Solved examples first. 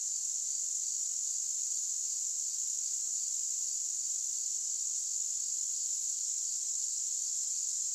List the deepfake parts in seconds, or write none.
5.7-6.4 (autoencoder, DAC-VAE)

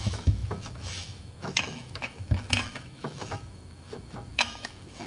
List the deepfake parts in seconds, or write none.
0.0-5.1 (autoencoder, DAC-VAE)

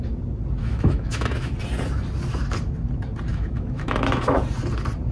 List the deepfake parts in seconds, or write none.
0.6-1.5 (autoencoder, DAC-VAE); 3.3-4.4

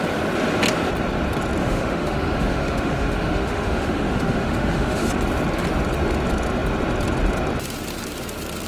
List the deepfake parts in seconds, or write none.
1.6-5.1 (autoencoder, DAC-VAE)

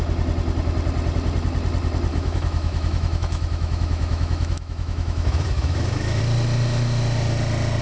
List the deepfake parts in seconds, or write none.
2.1-6.2 (autoencoder, DAC-VAE)

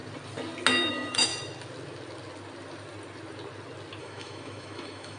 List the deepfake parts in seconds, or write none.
0.9-1.3 (autoencoder, DAC-VAE); 4.0-5.2

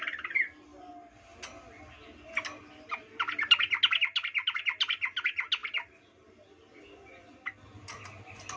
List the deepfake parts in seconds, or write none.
none